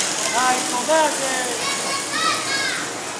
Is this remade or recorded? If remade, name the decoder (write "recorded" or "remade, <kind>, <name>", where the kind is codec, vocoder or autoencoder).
recorded